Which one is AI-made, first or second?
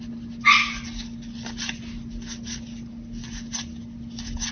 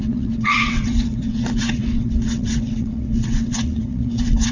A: second